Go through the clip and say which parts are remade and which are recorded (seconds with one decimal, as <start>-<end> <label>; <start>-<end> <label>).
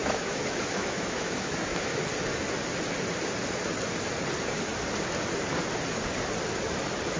0.0-2.0 remade; 2.0-7.2 recorded